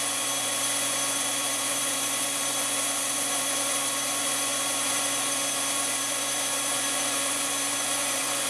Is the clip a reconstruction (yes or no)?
yes